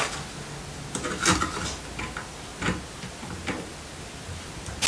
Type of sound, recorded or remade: recorded